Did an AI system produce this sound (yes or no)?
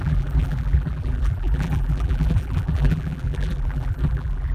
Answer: yes